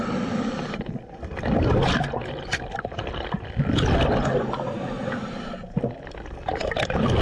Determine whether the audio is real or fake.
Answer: real